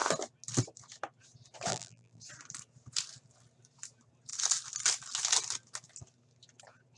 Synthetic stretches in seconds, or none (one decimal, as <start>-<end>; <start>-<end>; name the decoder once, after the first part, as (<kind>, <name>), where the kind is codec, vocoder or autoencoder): 1.7-2.2 (vocoder, BigVGAN v2)